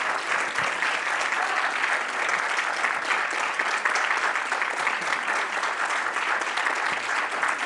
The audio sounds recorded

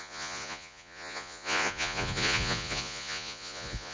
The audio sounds remade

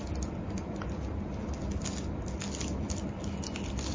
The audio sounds recorded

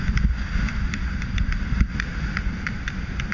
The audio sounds recorded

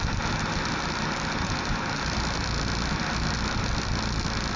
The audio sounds recorded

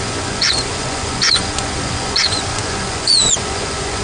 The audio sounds remade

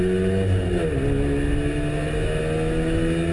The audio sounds recorded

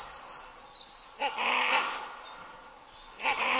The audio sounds recorded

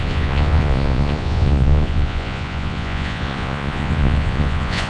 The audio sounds remade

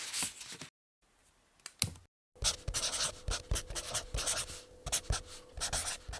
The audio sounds recorded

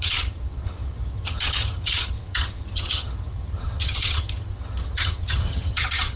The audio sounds remade